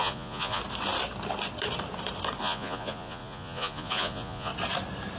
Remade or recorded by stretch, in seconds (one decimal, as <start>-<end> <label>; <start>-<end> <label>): 0.0-0.6 remade; 0.6-2.4 recorded; 2.4-4.5 remade; 4.5-5.2 recorded